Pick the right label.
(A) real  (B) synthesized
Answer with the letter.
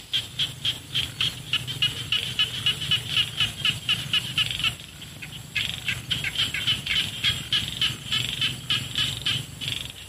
A